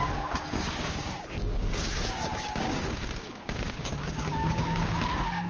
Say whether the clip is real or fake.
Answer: fake